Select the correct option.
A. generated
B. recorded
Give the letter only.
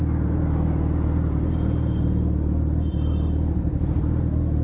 B